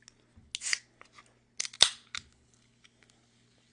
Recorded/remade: recorded